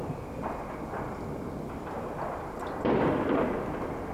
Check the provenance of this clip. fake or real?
real